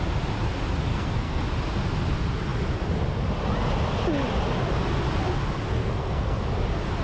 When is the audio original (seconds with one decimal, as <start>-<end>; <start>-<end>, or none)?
0.0-0.9; 1.4-5.8; 6.4-7.0